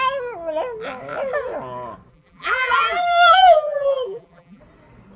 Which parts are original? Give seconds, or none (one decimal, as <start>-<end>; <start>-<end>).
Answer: 0.0-2.1; 4.6-5.2